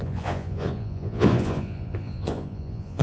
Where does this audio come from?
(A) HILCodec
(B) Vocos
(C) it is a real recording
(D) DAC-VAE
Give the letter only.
B